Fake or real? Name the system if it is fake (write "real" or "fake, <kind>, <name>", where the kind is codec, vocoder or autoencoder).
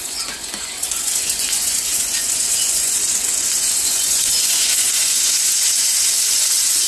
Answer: fake, vocoder, Vocos